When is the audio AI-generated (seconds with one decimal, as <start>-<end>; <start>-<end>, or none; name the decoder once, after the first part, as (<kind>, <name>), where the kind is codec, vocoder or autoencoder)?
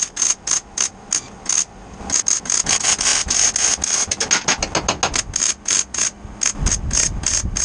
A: none